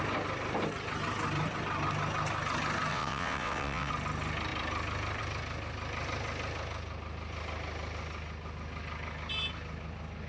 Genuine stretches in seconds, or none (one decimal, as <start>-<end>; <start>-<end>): 0.0-2.9; 3.9-10.3